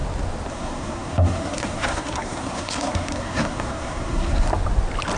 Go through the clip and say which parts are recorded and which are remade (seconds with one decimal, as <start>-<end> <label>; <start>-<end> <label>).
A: 0.0-0.5 recorded; 0.5-4.5 remade; 4.5-5.2 recorded